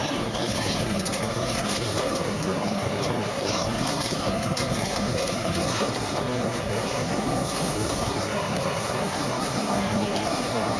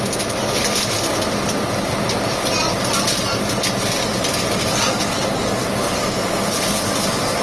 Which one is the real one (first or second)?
second